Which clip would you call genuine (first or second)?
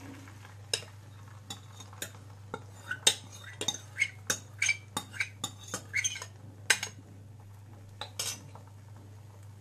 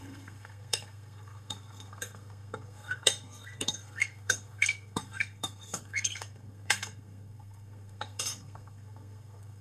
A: first